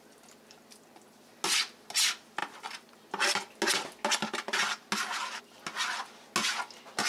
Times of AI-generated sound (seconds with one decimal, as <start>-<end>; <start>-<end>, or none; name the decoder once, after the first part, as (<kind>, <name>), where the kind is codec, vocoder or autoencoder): none